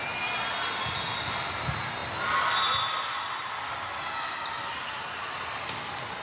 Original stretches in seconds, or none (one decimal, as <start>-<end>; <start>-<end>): 0.0-6.2